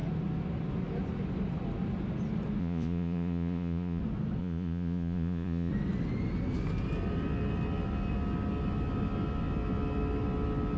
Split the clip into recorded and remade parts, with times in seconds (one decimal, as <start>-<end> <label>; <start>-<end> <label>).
0.0-2.6 recorded; 2.6-4.0 remade; 4.0-4.4 recorded; 4.4-5.7 remade; 5.7-10.8 recorded